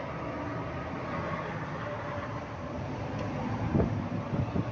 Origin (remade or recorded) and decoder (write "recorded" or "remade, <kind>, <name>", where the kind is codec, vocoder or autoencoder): recorded